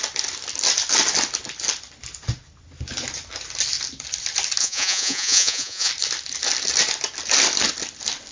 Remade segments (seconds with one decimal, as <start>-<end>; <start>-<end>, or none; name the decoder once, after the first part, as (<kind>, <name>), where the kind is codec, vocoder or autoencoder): 4.6-5.9 (vocoder, Vocos)